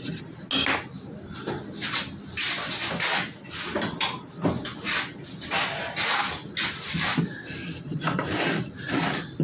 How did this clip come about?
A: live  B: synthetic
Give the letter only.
A